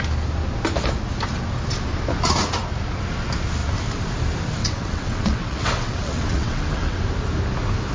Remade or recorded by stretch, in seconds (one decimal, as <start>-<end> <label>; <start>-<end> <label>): 0.0-4.6 recorded; 4.6-7.0 remade; 7.0-7.9 recorded